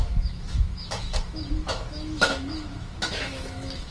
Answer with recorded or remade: remade